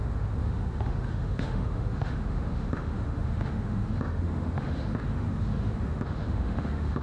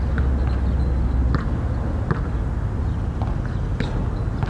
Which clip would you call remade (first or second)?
first